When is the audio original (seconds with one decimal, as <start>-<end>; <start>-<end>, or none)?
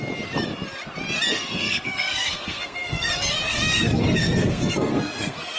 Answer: 0.0-1.3; 3.1-3.5